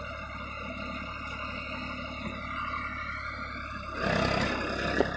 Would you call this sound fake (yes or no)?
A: no